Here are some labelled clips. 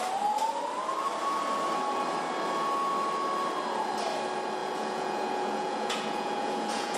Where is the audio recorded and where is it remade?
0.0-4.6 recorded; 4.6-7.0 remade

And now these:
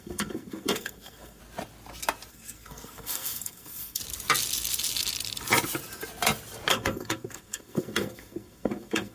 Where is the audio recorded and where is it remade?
0.0-1.4 remade; 1.4-2.3 recorded; 2.3-4.0 remade; 4.0-6.7 recorded; 6.7-9.1 remade

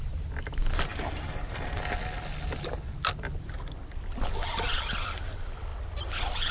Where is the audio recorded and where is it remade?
0.0-6.5 recorded

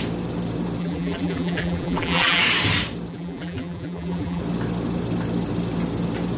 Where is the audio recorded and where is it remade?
0.0-0.8 recorded; 0.8-2.4 remade; 2.4-3.1 recorded; 3.1-4.4 remade; 4.4-6.4 recorded